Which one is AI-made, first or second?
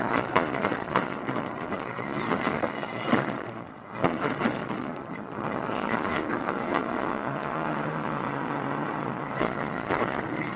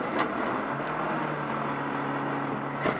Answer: first